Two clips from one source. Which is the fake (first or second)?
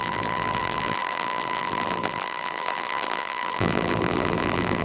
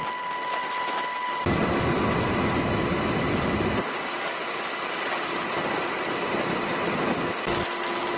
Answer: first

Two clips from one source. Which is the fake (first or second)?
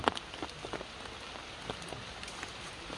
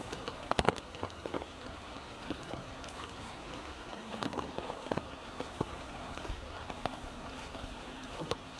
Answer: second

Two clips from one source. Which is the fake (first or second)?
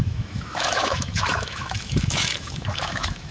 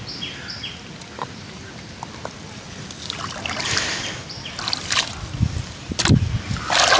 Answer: first